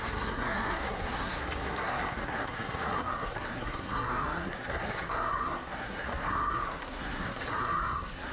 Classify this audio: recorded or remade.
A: remade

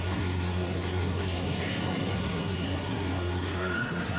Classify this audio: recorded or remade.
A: remade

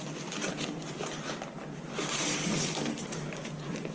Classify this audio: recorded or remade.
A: recorded